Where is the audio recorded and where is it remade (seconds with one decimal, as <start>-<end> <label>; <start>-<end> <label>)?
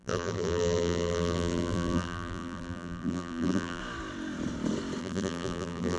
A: 0.0-3.8 remade; 3.8-5.0 recorded; 5.0-6.0 remade